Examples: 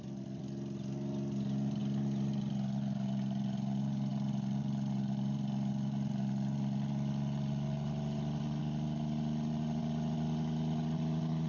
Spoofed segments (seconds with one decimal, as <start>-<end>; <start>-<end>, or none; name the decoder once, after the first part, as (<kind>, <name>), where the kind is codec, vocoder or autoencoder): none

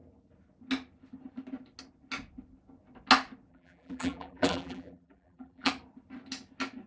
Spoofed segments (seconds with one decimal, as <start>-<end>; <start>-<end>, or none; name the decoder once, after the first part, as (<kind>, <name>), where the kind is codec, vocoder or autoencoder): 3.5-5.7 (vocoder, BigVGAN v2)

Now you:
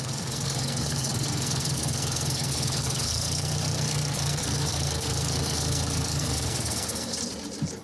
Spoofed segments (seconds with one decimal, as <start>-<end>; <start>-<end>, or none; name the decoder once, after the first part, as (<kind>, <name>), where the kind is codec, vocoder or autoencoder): 0.0-7.1 (codec, SNAC)